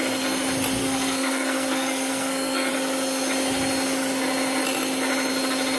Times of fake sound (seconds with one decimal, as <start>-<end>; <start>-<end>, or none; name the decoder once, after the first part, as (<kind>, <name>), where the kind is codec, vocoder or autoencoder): 0.8-2.7 (codec, SNAC)